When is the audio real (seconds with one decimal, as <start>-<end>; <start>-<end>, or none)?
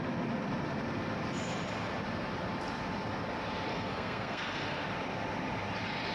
0.0-3.7; 4.8-6.1